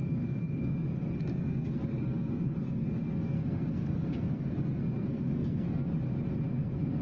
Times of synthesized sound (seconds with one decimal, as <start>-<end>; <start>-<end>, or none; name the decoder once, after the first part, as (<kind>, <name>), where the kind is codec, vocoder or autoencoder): 0.0-5.9 (codec, SNAC); 6.5-7.0